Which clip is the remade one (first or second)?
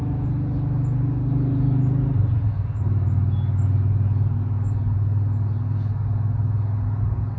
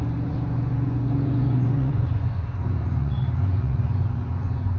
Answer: second